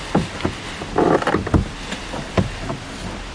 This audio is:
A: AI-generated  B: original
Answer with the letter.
B